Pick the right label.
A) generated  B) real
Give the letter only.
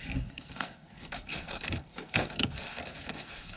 A